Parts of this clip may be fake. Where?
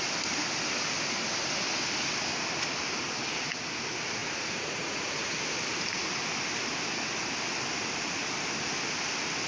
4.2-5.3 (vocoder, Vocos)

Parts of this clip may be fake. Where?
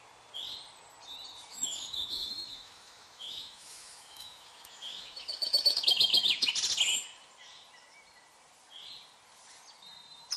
1.5-6.5 (autoencoder, DAC-VAE)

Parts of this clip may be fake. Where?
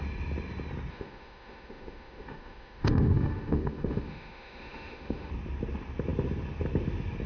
0.9-5.3 (autoencoder, DAC-VAE)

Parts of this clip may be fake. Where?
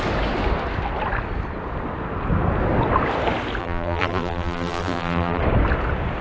3.6-5.4 (vocoder, BigVGAN v2)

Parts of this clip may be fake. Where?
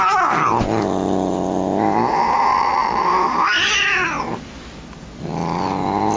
2.5-3.0 (vocoder, Vocos)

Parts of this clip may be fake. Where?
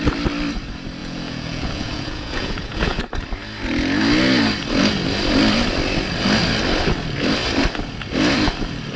1.0-3.0 (vocoder, Vocos)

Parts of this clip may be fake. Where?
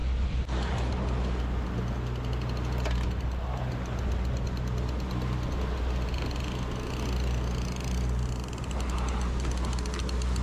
0.0-0.9 (vocoder, BigVGAN v2)